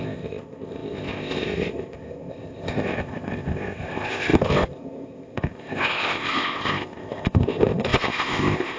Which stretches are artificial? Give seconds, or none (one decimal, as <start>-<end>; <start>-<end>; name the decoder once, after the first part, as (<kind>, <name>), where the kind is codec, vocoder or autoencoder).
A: 0.0-8.8 (codec, ZipCodec)